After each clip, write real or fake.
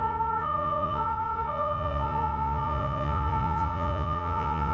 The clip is fake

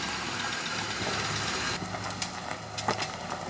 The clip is real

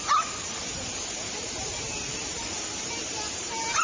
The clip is fake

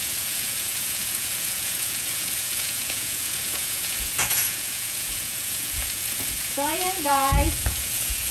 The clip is fake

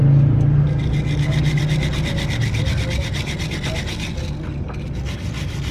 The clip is real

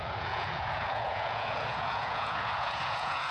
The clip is fake